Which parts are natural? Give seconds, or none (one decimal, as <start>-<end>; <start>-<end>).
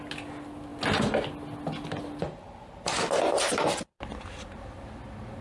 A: 0.0-5.4